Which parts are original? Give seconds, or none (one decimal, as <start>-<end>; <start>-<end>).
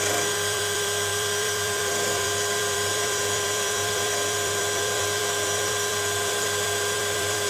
none